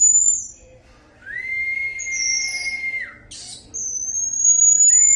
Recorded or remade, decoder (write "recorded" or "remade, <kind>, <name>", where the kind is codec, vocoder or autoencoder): recorded